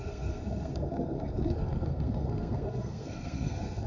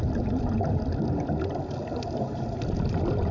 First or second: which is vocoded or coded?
first